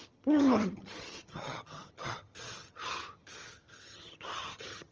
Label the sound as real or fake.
fake